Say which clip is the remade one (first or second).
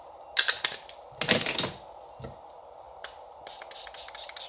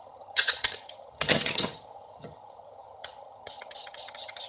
second